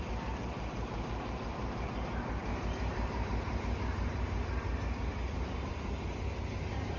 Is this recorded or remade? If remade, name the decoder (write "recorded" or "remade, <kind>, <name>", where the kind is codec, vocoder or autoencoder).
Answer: remade, vocoder, BigVGAN v2